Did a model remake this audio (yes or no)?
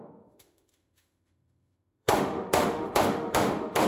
yes